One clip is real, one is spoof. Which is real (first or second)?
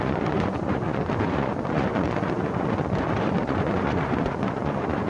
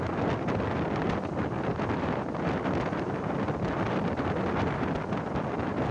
second